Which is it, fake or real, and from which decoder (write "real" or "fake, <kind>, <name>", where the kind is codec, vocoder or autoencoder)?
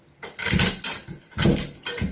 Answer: real